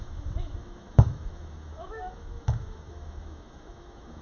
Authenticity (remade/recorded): remade